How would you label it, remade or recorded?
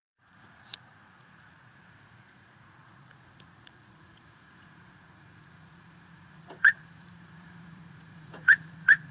remade